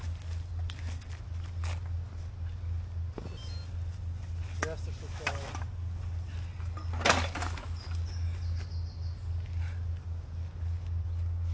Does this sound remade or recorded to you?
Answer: recorded